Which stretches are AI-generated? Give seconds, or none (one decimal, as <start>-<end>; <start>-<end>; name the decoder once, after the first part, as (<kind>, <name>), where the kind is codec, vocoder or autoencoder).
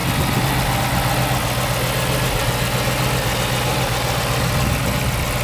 0.0-0.8 (vocoder, BigVGAN v2)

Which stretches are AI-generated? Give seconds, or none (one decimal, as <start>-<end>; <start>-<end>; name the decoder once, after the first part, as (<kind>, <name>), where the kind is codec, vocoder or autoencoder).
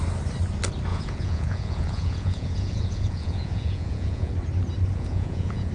0.9-4.3 (vocoder, Vocos); 4.9-5.7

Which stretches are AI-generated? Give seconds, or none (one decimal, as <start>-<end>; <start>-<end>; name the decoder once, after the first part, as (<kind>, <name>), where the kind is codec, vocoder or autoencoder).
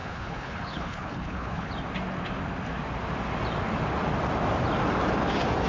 0.0-1.7 (codec, HILCodec)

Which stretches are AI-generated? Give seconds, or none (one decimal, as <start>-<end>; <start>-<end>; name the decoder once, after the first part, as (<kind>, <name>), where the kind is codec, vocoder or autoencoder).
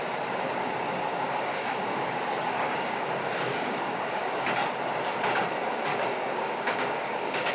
1.1-4.5 (codec, DAC); 5.9-7.5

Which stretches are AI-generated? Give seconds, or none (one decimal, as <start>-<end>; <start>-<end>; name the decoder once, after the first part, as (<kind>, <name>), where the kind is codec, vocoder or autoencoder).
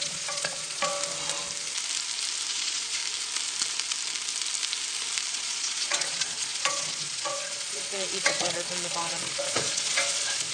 0.0-0.9 (vocoder, Vocos); 2.5-3.0; 5.3-10.5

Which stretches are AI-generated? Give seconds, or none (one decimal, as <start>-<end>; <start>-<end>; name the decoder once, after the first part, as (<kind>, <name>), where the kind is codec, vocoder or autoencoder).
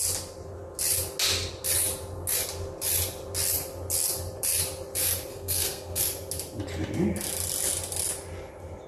5.3-6.0 (codec, SNAC)